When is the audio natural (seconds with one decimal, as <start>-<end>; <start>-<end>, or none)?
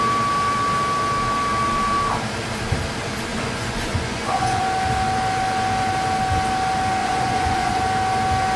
0.0-3.3; 4.6-7.0; 7.8-8.6